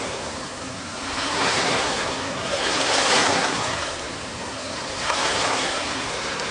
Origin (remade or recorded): remade